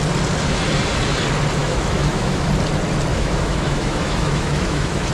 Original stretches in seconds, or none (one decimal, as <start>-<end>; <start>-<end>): 0.0-1.6; 2.5-3.1